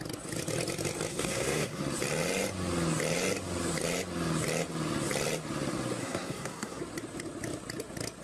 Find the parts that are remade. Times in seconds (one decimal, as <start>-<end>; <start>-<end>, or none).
1.1-1.8; 6.0-6.8